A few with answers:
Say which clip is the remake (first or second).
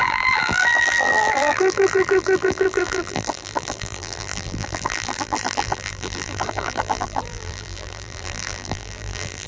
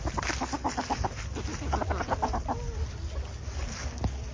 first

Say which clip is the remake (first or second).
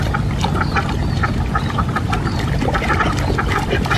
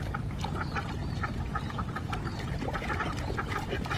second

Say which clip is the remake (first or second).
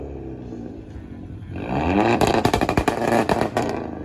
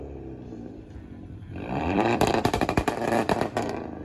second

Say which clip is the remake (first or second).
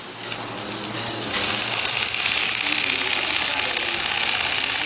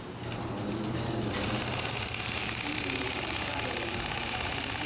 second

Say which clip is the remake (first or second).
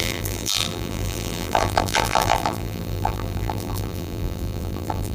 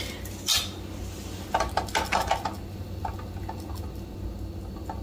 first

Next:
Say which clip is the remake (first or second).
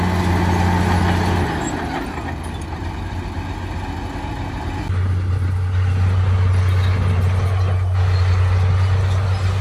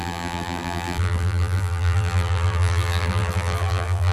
second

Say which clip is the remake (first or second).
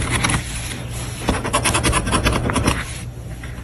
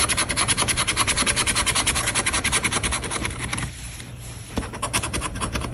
second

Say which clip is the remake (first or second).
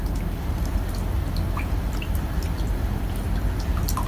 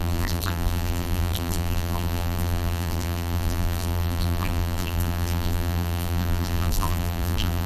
second